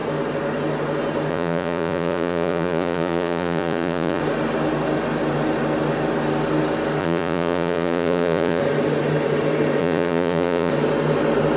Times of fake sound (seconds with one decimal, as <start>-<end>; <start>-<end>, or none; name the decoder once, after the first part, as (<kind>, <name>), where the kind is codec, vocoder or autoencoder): 1.3-4.2 (vocoder, Vocos); 7.0-8.6; 9.8-10.7

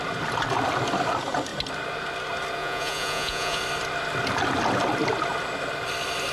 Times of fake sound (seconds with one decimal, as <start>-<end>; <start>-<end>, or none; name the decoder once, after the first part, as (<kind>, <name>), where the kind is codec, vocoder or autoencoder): 2.6-3.6 (vocoder, Vocos)

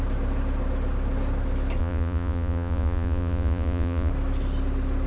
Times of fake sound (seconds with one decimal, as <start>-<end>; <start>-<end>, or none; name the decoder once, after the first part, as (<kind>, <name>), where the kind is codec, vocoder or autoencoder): 1.8-4.1 (vocoder, Vocos)

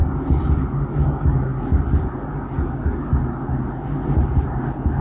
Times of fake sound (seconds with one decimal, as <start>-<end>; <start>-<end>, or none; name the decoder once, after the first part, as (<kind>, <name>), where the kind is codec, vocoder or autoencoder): none